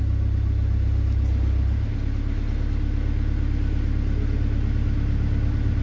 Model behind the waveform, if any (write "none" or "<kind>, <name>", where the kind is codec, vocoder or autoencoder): none